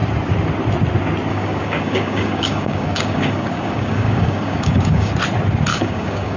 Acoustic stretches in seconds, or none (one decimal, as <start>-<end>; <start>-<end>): 0.0-1.3; 5.1-5.7

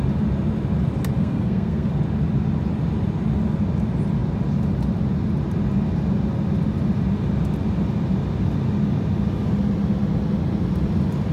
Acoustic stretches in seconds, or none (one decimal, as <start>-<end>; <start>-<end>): 0.0-1.2; 1.9-11.3

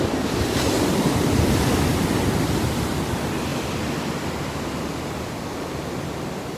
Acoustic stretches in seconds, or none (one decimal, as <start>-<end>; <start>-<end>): 0.0-6.6

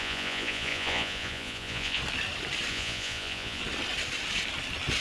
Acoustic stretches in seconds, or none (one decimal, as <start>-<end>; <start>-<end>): 2.0-2.7; 3.6-5.0

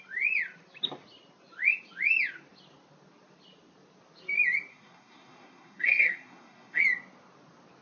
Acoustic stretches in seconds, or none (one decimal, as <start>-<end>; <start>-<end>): 0.0-4.7; 6.8-7.8

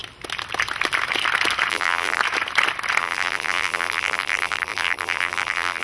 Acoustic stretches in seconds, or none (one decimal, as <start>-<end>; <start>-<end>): 0.0-1.7; 2.2-3.0

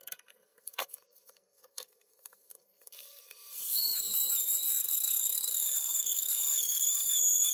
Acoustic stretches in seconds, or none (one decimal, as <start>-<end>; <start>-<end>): none